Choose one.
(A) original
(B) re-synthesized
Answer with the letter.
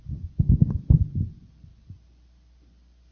A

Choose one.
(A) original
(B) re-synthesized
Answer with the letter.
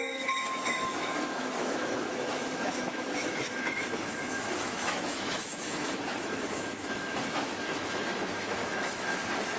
B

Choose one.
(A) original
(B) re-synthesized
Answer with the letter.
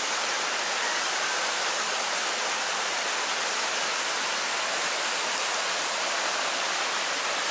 A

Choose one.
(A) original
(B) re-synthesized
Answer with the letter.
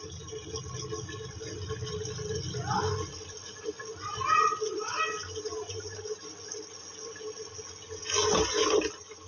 A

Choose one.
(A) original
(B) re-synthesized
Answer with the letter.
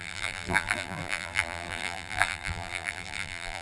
B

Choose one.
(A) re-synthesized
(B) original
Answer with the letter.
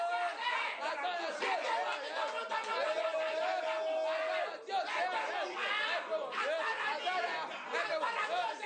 B